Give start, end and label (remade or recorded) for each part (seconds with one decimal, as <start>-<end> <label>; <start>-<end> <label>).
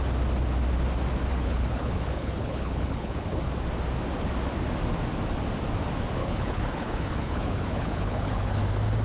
0.0-1.3 recorded; 1.3-3.4 remade; 3.4-6.2 recorded; 6.2-8.6 remade; 8.6-9.0 recorded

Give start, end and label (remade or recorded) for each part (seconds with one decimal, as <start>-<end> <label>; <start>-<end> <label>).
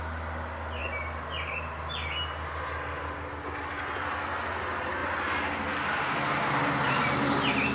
0.0-7.7 recorded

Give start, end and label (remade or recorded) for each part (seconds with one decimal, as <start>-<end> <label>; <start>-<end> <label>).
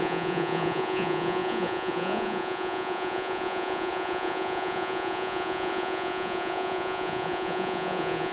0.0-8.3 remade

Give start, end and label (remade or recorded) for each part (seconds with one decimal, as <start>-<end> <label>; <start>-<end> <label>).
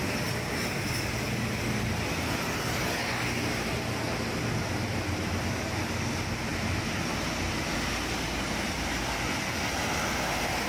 0.0-10.7 recorded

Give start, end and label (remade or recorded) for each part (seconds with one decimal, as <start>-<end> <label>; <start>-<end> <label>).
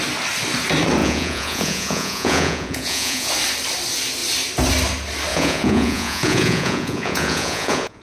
0.0-1.0 recorded; 1.0-3.3 remade; 3.3-5.3 recorded; 5.3-8.0 remade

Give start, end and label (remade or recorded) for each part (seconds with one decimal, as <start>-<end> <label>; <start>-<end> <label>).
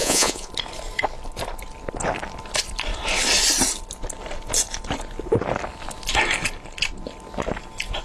0.0-0.5 remade; 0.5-8.0 recorded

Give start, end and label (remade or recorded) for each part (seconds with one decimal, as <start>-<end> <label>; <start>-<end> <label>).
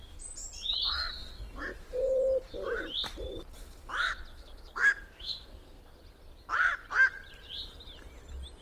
0.0-4.3 recorded; 4.3-5.8 remade; 5.8-8.6 recorded